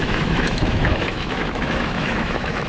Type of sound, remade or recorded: remade